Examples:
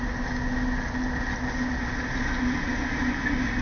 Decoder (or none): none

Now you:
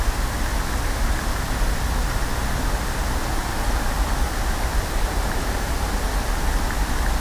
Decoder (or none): none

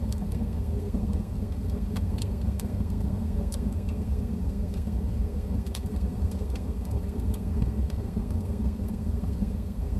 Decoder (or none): codec, SNAC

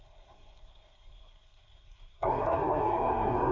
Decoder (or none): codec, SNAC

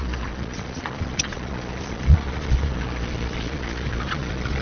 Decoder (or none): vocoder, Vocos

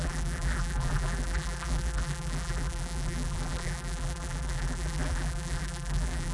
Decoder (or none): vocoder, BigVGAN v2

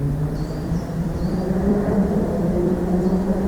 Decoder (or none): vocoder, BigVGAN v2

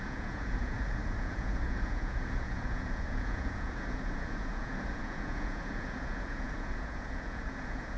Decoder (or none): vocoder, Vocos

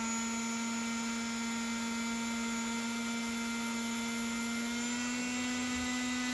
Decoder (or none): none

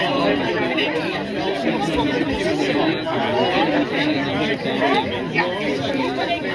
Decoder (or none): none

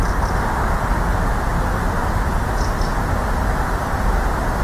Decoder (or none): none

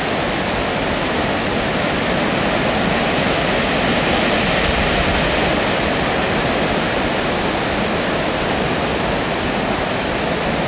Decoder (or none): none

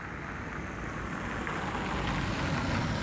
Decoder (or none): none